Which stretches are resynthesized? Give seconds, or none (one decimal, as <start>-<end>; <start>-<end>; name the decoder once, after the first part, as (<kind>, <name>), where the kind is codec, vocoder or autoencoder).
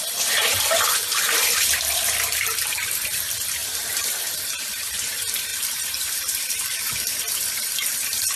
0.0-8.4 (vocoder, BigVGAN v2)